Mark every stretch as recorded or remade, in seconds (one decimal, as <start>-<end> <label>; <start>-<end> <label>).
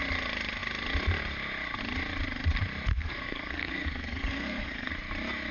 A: 0.0-2.9 recorded; 2.9-4.9 remade; 4.9-5.5 recorded